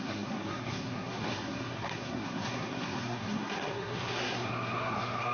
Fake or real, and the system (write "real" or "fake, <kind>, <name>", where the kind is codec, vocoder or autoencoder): fake, codec, SNAC